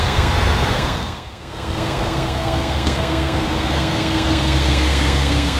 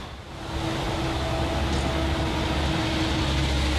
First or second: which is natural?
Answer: second